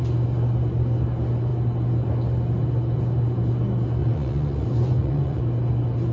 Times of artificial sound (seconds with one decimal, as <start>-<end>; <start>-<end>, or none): 4.0-5.4